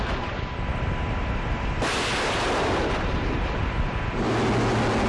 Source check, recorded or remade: recorded